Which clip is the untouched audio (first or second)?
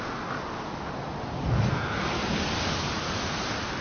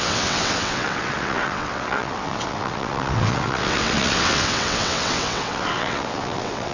first